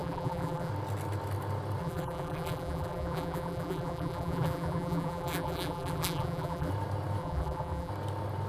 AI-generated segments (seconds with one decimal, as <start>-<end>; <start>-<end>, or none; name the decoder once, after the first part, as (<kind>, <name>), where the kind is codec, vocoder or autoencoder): 0.0-0.7 (vocoder, BigVGAN v2); 1.8-6.7; 7.2-7.9